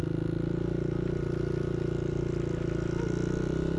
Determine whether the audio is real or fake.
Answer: real